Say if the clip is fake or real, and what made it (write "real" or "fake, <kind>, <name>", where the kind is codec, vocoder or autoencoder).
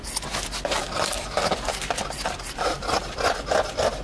real